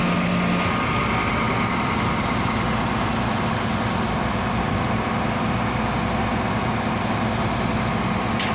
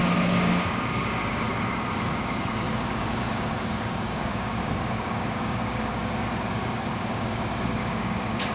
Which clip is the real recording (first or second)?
first